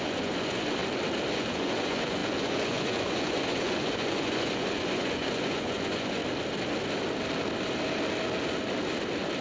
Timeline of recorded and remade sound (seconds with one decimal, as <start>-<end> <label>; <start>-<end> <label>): 0.0-0.8 remade; 0.8-1.3 recorded; 1.3-6.2 remade; 6.2-9.4 recorded